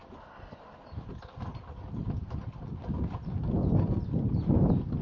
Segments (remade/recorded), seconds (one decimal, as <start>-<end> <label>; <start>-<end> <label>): 0.0-5.0 recorded